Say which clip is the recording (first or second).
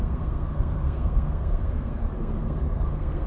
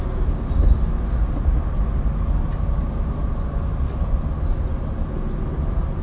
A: second